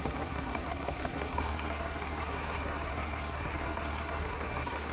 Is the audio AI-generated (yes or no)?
yes